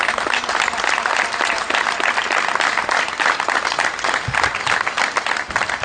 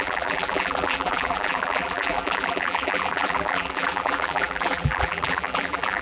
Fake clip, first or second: second